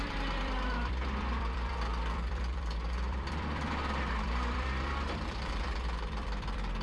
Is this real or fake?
fake